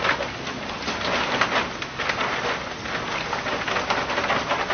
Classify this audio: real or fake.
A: real